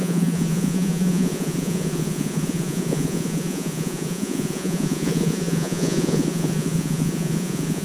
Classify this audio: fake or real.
fake